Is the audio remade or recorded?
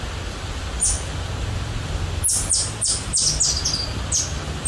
recorded